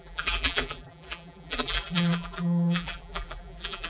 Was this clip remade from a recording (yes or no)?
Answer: yes